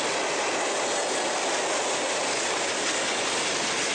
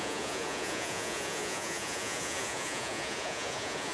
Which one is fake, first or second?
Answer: second